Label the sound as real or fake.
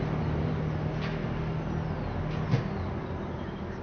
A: real